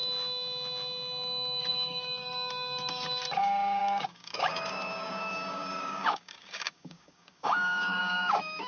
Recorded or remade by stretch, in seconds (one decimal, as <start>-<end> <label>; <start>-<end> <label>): 0.0-1.6 recorded; 1.6-8.7 remade